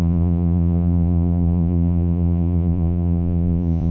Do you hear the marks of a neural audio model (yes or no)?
yes